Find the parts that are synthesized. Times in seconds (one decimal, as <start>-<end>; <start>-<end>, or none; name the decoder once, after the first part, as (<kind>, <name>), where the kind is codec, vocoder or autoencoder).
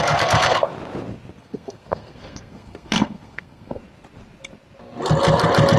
0.0-0.7 (codec, SNAC); 1.4-3.8